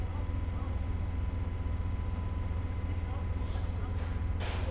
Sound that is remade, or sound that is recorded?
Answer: recorded